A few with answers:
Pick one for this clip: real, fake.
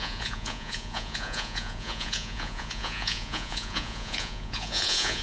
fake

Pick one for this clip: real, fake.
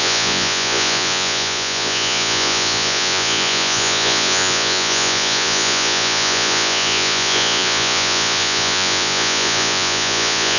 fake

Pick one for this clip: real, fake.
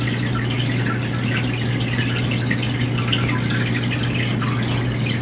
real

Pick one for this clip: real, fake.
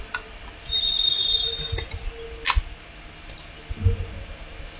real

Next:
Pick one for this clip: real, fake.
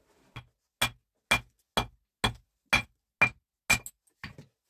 real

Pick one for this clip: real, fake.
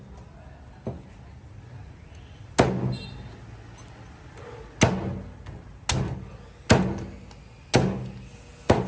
real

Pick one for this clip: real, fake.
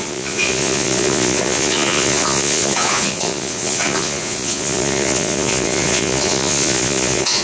fake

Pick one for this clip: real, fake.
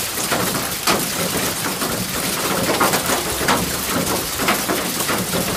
real